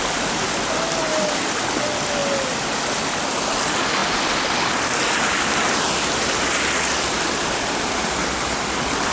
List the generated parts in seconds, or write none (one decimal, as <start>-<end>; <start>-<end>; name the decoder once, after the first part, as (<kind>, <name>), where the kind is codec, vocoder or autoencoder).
none